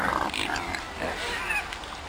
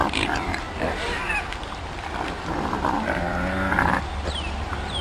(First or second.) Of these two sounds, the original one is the first